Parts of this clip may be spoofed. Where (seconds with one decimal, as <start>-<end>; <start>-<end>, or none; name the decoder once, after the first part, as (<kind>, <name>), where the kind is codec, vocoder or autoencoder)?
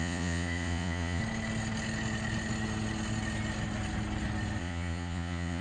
0.0-1.2 (vocoder, Vocos); 4.6-5.6